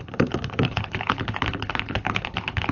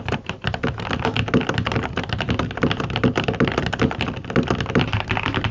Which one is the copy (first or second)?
first